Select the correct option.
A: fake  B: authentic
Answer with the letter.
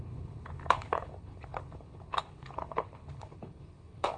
A